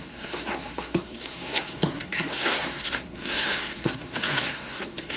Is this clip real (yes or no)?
no